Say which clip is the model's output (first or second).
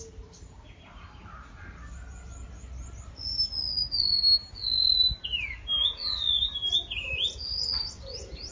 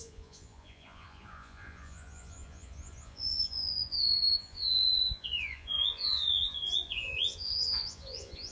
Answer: second